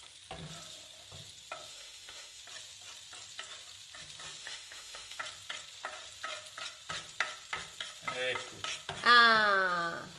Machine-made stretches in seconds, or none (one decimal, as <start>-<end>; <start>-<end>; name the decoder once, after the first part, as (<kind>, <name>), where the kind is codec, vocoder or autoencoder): 1.7-2.4 (autoencoder, DAC-VAE); 4.4-5.2